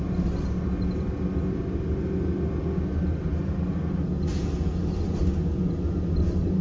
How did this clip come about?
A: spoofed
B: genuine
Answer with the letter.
B